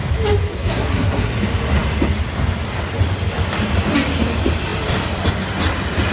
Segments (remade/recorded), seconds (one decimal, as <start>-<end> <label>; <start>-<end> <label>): 0.0-0.5 recorded; 0.5-1.3 remade; 1.3-6.1 recorded